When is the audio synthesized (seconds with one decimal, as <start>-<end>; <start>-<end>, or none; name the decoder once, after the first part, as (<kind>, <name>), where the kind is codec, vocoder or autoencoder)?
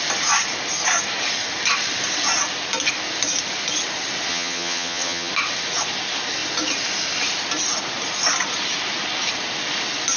4.3-5.3 (vocoder, HiFi-GAN)